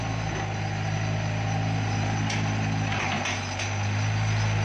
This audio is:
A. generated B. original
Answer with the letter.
B